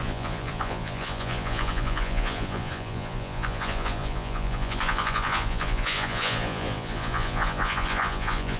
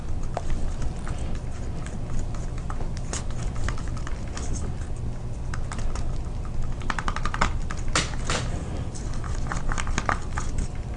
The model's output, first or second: first